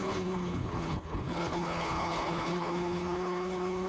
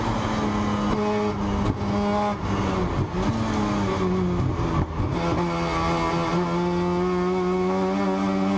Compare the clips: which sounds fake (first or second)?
first